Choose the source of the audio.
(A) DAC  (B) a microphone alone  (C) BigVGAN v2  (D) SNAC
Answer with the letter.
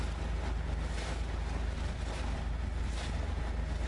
B